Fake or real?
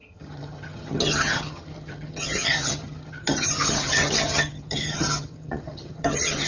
fake